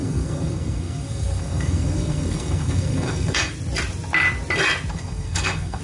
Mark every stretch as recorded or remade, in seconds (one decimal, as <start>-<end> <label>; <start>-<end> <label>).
0.0-3.5 remade; 3.5-4.9 recorded; 4.9-5.8 remade